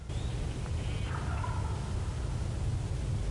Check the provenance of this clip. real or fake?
real